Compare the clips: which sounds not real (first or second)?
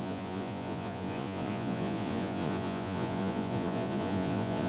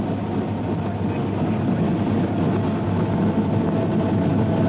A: first